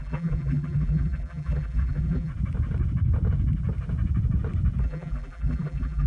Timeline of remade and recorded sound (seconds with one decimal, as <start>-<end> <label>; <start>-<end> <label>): 0.0-2.3 remade; 2.3-4.8 recorded; 4.8-6.1 remade